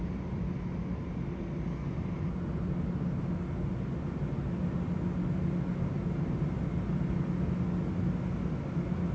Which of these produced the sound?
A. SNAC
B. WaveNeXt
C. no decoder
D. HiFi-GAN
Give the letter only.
C